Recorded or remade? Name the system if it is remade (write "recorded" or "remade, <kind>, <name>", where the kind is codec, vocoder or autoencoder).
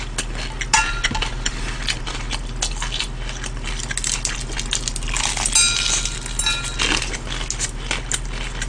recorded